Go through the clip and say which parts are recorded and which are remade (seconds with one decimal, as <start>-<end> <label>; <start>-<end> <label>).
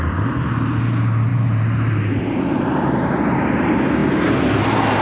0.0-1.3 recorded; 1.3-2.6 remade; 2.6-5.0 recorded